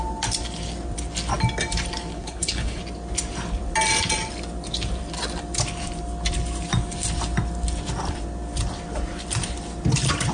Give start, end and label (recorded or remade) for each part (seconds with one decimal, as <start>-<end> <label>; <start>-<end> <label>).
0.0-2.1 recorded; 2.1-2.8 remade; 2.8-10.3 recorded